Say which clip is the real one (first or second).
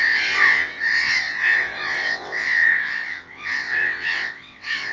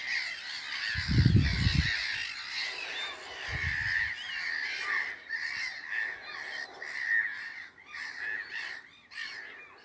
second